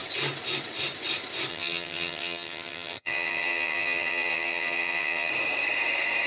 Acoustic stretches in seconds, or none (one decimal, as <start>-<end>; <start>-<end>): 0.0-1.5; 5.3-6.3